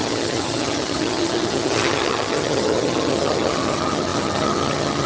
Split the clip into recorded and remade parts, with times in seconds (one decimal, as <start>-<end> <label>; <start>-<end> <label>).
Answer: 0.0-5.1 remade